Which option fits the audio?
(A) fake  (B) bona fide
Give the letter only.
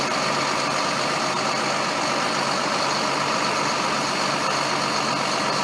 B